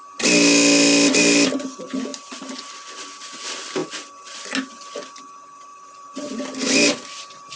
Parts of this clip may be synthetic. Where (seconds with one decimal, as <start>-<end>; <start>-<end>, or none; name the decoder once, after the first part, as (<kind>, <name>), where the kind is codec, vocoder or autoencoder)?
2.1-2.9 (vocoder, BigVGAN v2); 5.7-6.3